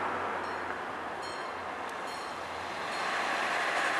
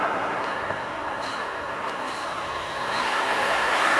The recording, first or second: first